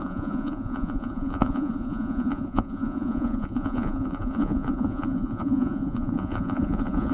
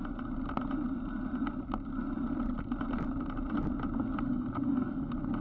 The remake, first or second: first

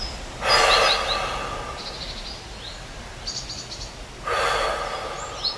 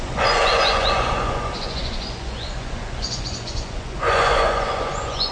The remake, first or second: second